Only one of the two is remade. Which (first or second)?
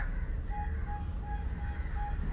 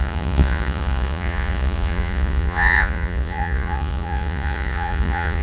second